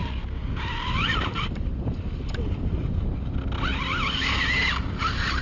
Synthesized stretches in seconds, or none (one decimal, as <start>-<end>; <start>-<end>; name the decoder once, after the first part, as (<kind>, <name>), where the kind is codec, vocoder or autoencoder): none